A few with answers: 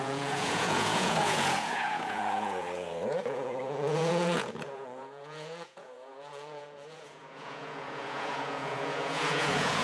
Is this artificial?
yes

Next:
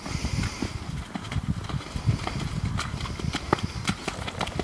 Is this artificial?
no